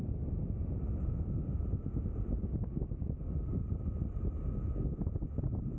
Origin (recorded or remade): recorded